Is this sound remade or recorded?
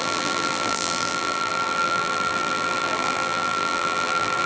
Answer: remade